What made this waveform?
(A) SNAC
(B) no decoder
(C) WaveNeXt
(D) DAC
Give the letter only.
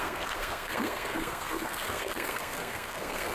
A